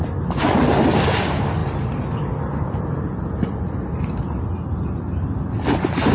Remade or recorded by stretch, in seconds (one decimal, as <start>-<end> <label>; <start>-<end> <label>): 0.0-6.1 recorded